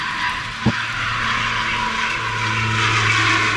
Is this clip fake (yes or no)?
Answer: no